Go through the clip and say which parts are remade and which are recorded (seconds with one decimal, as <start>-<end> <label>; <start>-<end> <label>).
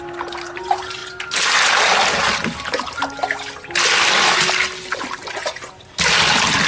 0.0-6.7 recorded